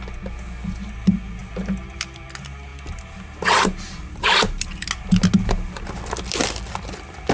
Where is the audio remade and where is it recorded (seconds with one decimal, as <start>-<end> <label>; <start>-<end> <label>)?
0.0-7.3 recorded